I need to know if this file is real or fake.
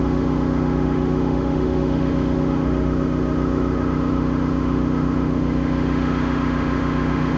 fake